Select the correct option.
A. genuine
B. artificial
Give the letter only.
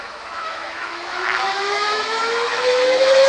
B